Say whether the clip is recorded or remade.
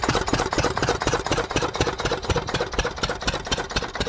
remade